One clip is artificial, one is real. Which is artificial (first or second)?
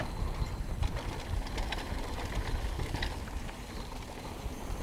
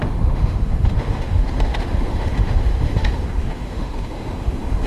second